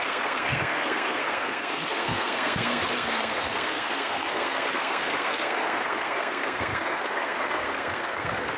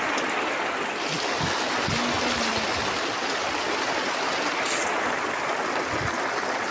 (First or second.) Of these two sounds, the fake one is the first